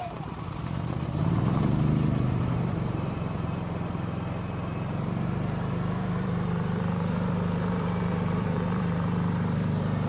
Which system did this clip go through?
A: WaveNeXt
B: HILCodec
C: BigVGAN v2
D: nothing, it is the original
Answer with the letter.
C